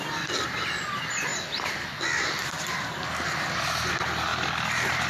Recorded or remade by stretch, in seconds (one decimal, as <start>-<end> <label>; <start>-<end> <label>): 0.0-5.1 recorded